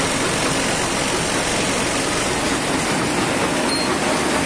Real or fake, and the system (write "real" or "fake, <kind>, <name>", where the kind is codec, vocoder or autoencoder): real